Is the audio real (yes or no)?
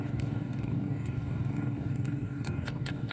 no